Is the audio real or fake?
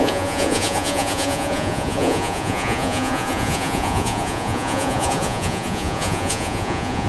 fake